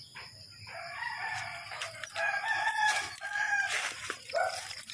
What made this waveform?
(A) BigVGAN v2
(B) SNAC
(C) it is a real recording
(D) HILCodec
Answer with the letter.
A